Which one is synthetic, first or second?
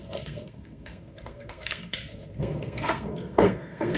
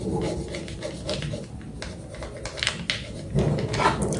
first